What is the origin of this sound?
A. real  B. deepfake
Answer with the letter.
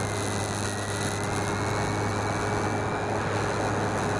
A